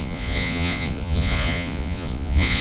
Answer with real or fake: fake